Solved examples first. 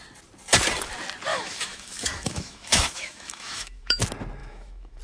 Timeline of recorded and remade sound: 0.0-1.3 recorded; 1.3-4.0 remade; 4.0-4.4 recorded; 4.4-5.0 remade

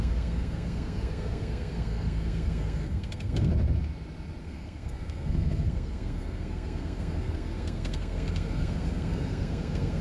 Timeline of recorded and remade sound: 0.0-3.5 remade; 3.5-4.4 recorded; 4.4-10.0 remade

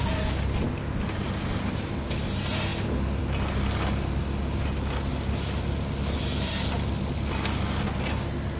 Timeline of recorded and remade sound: 0.0-8.6 recorded

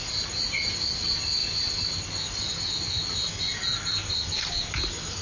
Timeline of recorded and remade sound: 0.0-5.2 recorded